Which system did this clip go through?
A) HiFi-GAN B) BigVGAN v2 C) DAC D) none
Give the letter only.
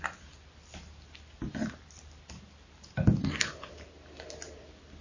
D